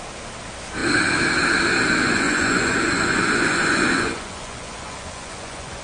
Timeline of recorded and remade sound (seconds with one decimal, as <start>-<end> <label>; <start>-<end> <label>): 0.0-2.0 recorded; 2.0-5.8 remade

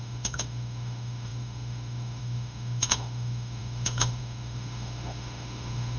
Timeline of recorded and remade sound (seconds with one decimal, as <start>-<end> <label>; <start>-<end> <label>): 0.0-6.0 remade

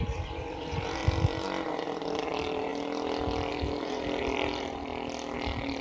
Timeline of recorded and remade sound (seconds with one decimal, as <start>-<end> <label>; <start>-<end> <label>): 0.0-1.0 remade; 1.0-1.7 recorded; 1.7-2.7 remade; 2.7-3.5 recorded; 3.5-4.9 remade; 4.9-5.8 recorded